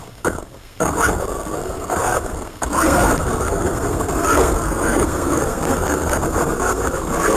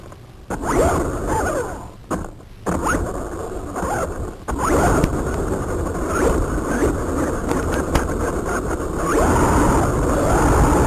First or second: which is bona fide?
second